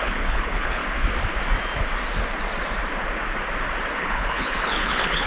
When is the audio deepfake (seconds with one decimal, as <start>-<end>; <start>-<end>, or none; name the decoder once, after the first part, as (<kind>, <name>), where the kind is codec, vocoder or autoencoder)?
0.0-0.8 (codec, HILCodec); 4.0-5.3